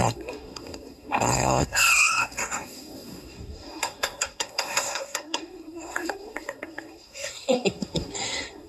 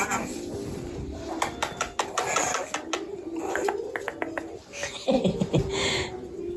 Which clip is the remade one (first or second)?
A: first